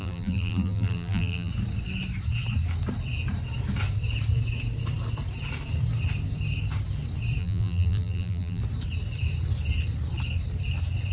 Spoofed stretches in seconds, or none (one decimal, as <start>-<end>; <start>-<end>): 0.0-1.5; 7.4-8.6